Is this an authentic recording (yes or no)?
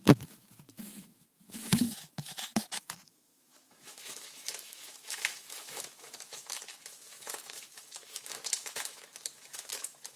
no